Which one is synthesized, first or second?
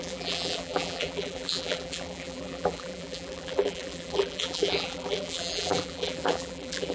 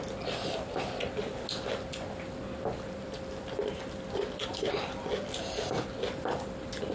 first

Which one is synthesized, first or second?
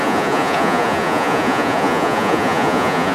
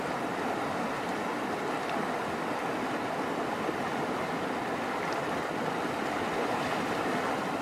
first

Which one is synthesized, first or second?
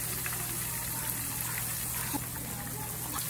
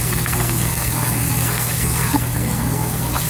second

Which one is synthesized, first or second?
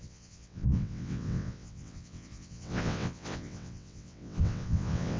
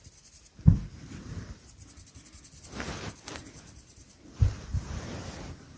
first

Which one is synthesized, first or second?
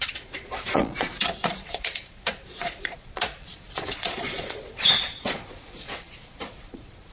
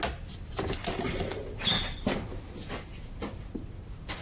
first